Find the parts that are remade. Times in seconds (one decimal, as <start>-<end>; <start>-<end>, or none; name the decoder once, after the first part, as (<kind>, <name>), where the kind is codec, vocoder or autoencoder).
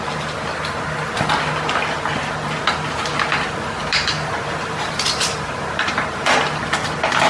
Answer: 3.8-5.9 (vocoder, BigVGAN v2)